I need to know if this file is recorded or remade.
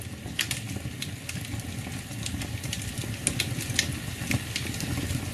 recorded